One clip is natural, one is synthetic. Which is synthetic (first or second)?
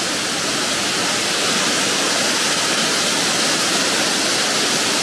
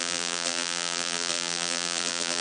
second